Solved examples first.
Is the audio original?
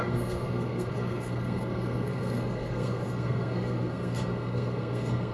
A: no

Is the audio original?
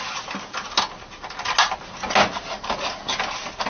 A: yes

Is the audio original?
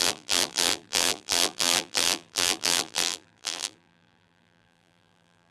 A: no